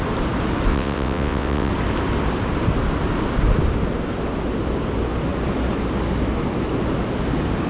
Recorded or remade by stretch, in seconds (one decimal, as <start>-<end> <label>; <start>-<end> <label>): 0.0-0.7 recorded; 0.7-1.7 remade; 1.7-7.7 recorded